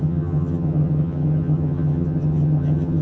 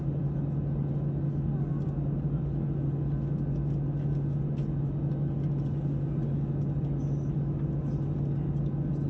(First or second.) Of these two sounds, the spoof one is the first